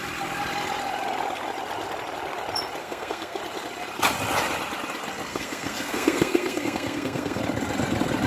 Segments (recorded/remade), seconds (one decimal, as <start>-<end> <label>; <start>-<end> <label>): 0.0-2.8 recorded; 2.8-3.4 remade; 3.4-5.3 recorded; 5.3-7.4 remade; 7.4-8.3 recorded